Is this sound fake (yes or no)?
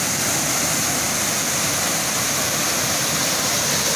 no